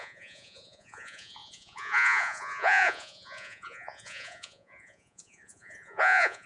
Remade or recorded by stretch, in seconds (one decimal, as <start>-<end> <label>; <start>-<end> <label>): 0.0-6.5 remade